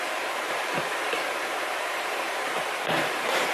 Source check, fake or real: fake